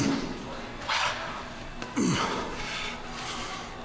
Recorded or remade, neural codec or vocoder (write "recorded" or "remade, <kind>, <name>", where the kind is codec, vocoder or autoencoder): recorded